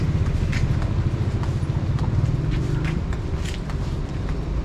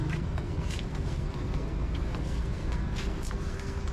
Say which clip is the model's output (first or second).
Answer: second